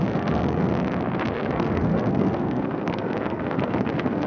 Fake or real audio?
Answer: fake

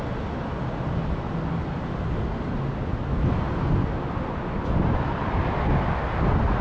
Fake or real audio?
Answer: real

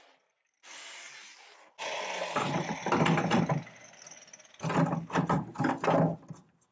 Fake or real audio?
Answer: real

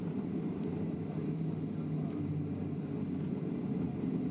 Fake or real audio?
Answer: real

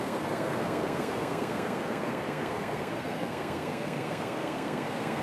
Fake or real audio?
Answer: fake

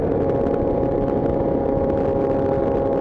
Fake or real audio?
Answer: real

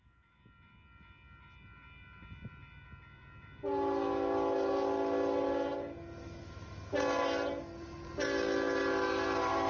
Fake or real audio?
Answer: real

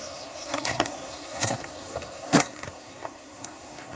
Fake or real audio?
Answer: fake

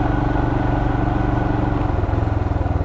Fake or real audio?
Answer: real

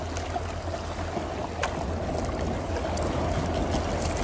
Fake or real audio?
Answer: real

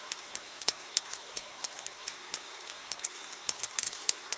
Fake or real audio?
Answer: fake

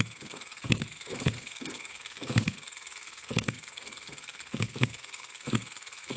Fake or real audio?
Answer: fake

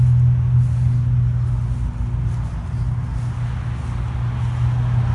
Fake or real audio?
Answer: real